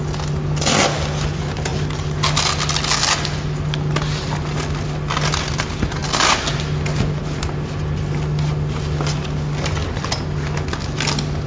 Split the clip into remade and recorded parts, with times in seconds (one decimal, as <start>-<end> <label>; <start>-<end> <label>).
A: 0.0-11.5 recorded